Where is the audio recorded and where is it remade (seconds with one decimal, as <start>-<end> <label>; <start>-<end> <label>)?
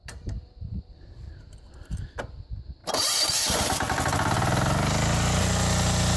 0.0-1.9 remade; 1.9-2.8 recorded; 2.8-3.6 remade; 3.6-6.2 recorded